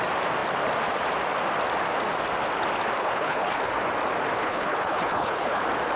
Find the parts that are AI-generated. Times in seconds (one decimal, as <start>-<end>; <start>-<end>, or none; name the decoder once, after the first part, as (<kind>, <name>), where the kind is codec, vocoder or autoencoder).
3.0-3.7 (codec, HILCodec); 4.4-5.6